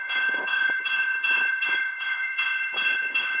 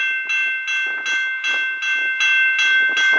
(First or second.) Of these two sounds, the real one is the second